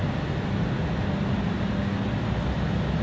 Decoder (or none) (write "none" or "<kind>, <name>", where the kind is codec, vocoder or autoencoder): none